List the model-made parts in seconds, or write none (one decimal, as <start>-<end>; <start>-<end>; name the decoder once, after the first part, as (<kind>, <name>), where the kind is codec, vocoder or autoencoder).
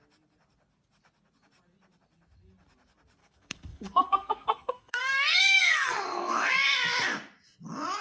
3.2-6.5 (codec, SNAC)